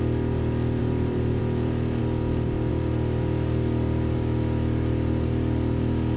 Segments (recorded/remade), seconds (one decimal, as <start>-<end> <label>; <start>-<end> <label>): 0.0-0.8 recorded; 0.8-1.4 remade; 1.4-6.2 recorded